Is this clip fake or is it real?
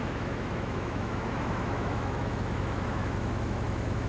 fake